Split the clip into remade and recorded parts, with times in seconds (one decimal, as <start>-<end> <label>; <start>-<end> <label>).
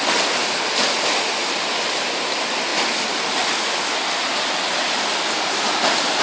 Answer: 0.0-6.2 recorded